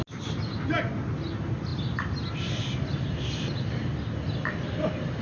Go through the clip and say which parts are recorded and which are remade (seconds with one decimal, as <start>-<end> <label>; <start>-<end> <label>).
0.0-5.2 recorded